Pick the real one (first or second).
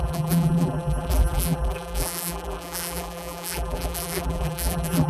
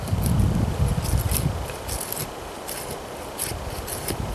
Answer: second